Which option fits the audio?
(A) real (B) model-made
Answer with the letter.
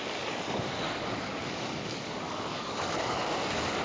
B